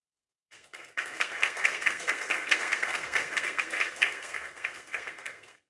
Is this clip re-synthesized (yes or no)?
yes